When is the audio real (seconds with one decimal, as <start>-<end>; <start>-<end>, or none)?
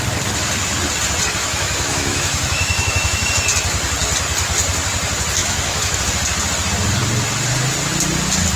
0.0-1.4; 3.3-5.4; 6.0-8.6